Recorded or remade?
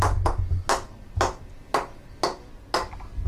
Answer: recorded